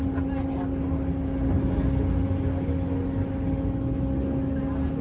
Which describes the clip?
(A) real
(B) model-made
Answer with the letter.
A